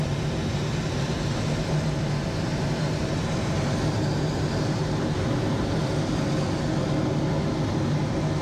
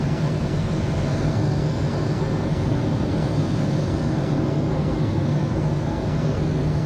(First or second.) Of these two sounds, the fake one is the second